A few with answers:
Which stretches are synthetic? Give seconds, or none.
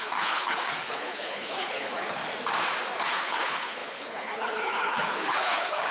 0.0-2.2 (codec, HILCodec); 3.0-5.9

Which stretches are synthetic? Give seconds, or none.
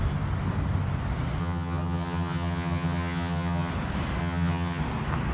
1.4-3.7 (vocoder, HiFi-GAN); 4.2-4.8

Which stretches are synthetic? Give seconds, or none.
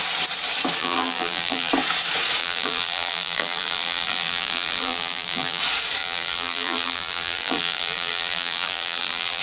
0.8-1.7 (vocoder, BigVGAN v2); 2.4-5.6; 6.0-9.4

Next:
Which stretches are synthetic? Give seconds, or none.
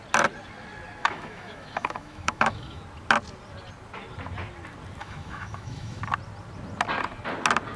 1.0-2.8 (autoencoder, DAC-VAE); 5.0-6.0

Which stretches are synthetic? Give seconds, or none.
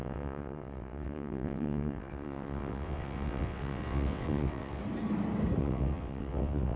0.0-4.8 (vocoder, WaveNeXt); 5.6-6.8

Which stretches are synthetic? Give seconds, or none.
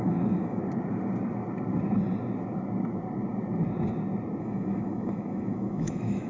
0.0-0.6 (autoencoder, DAC-VAE); 4.4-6.3